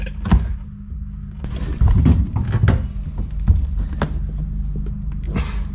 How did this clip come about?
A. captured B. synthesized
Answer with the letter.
A